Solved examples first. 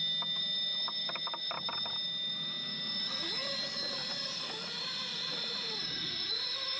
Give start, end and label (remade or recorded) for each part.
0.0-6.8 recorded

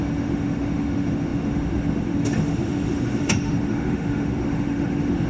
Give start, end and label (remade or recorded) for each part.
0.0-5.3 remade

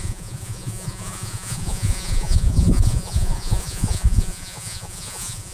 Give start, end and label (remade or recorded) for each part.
0.0-5.5 remade